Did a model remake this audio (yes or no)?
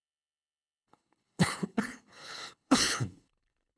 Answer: yes